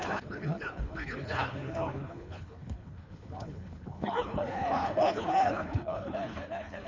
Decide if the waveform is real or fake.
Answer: fake